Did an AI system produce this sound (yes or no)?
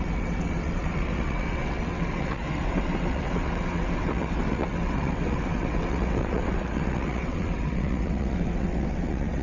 yes